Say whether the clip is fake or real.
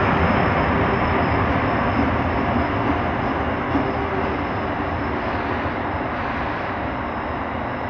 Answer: real